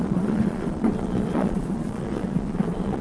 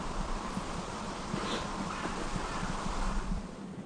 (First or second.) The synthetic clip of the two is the first